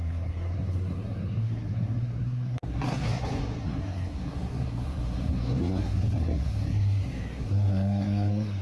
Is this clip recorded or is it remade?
remade